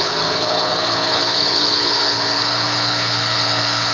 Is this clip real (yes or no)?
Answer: no